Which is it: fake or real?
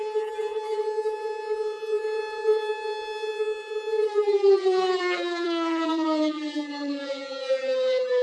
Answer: fake